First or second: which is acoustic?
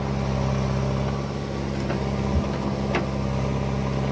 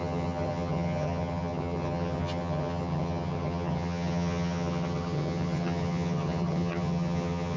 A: first